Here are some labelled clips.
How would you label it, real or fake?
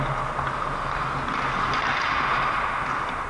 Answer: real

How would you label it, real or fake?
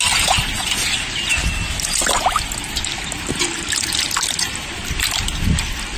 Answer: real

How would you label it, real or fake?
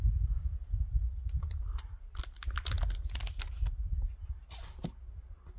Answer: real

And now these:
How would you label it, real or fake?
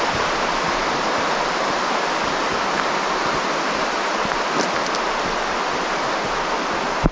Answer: real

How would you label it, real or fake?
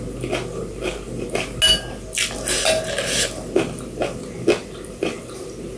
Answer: real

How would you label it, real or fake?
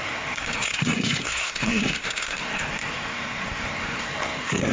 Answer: fake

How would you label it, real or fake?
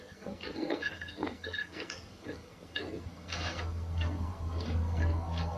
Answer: fake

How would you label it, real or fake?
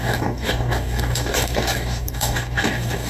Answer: fake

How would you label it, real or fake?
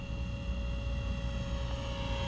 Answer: real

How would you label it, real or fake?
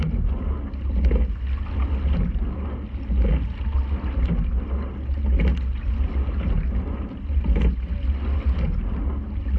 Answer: real